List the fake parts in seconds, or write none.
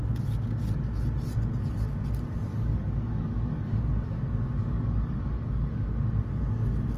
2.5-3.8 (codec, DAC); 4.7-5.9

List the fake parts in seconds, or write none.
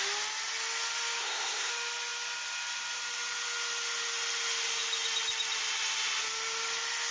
1.2-1.7 (codec, SNAC)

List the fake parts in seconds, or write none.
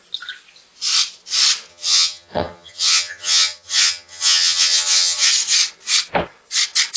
1.7-5.3 (vocoder, HiFi-GAN)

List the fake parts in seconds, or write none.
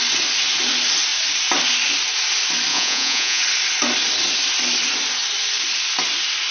2.7-3.4 (vocoder, Vocos)